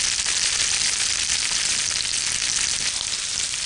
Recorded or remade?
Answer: recorded